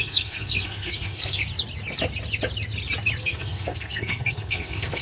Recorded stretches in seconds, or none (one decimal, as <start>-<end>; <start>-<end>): 1.4-3.2